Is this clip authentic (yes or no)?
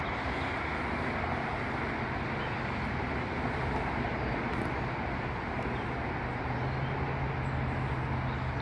yes